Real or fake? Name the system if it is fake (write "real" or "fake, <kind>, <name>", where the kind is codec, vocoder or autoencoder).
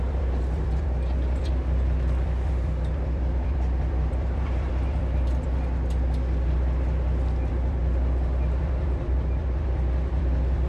fake, vocoder, BigVGAN v2